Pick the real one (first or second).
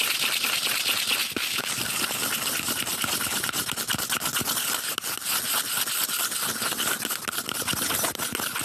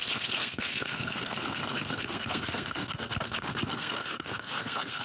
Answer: first